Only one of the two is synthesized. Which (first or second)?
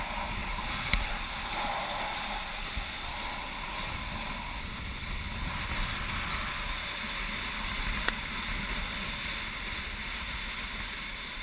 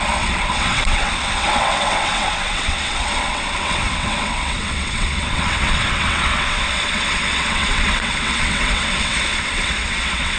second